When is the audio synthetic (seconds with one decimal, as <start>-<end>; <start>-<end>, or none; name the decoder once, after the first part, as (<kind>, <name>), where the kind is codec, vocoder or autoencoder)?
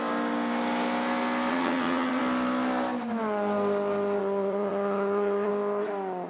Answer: 1.5-2.2 (vocoder, HiFi-GAN); 4.2-5.5